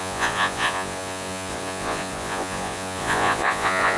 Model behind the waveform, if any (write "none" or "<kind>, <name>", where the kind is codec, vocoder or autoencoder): vocoder, Vocos